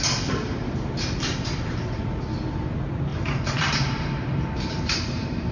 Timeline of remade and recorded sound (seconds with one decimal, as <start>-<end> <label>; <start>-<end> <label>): 0.0-0.6 recorded; 0.6-1.8 remade; 1.8-3.1 recorded; 3.1-5.5 remade